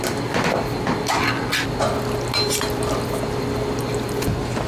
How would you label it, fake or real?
real